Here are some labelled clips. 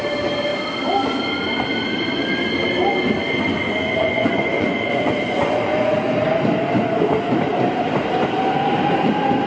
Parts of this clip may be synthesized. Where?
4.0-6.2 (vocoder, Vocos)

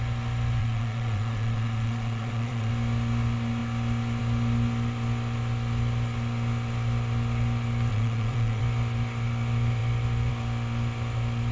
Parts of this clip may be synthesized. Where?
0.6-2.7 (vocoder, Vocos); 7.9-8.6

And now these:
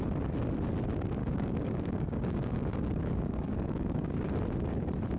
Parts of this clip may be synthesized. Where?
1.2-4.3 (codec, DAC)